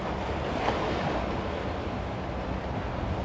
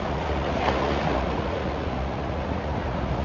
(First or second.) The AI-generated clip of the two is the second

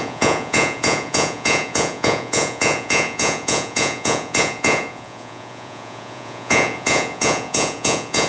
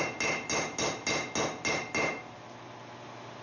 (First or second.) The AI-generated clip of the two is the first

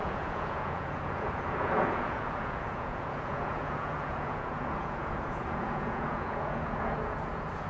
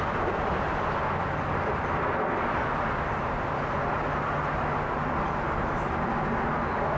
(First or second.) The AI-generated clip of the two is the first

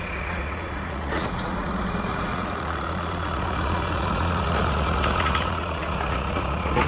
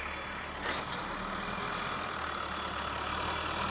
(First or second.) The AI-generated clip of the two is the first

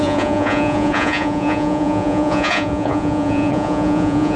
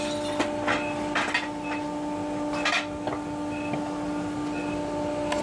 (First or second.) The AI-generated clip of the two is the first